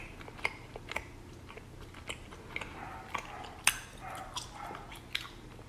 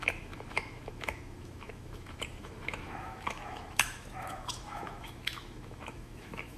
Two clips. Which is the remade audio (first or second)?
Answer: second